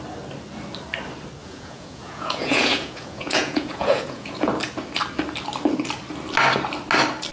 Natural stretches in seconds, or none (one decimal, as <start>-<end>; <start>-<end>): 0.0-1.4; 4.5-7.3